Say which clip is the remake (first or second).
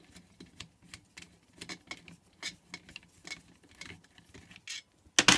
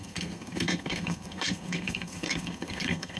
second